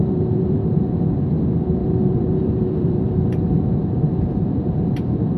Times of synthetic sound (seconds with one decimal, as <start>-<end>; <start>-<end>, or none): 0.0-1.3; 1.8-4.9